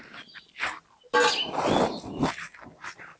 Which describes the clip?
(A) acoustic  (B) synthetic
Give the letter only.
A